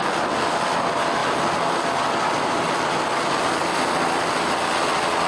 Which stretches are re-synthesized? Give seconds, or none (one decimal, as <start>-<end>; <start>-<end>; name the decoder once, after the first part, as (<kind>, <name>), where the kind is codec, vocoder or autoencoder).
none